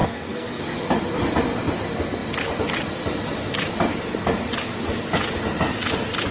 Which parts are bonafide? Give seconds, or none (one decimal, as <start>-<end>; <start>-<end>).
0.6-6.3